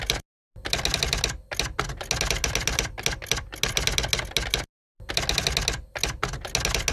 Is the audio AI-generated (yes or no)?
no